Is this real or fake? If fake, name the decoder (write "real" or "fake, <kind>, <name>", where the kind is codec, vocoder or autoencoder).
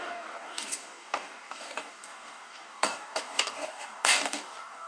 fake, codec, DAC